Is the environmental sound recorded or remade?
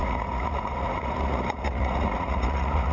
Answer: remade